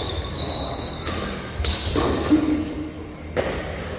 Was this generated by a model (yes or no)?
yes